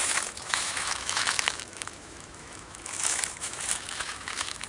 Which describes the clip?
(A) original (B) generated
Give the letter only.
B